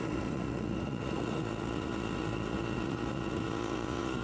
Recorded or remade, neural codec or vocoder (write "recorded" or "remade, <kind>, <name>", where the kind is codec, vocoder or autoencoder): remade, vocoder, Vocos